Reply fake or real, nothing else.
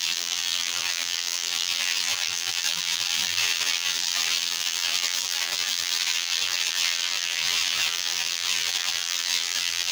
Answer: fake